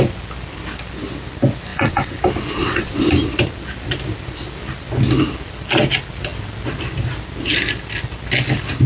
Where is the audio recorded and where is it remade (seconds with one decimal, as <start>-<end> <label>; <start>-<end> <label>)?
0.0-1.7 recorded; 1.7-2.2 remade; 2.2-2.6 recorded; 2.6-3.1 remade; 3.1-8.9 recorded